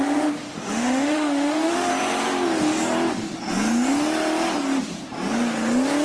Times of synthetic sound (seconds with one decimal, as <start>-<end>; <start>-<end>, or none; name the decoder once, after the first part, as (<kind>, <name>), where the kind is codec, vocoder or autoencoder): 0.5-1.9 (autoencoder, DAC-VAE)